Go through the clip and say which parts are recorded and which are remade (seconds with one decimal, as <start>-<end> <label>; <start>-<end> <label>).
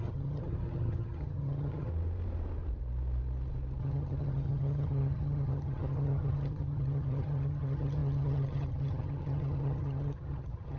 0.0-1.9 remade; 1.9-3.8 recorded; 3.8-10.8 remade